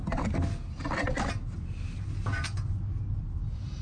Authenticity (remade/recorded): recorded